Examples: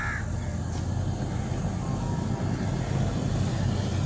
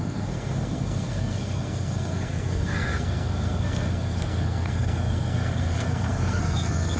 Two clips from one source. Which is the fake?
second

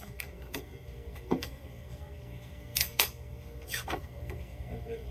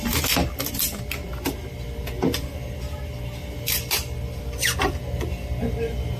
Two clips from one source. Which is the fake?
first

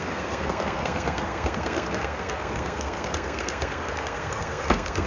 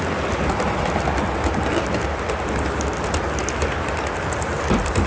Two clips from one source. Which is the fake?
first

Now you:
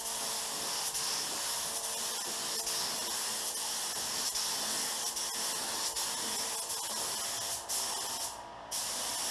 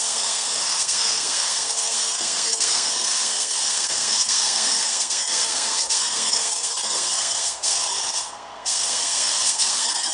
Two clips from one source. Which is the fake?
second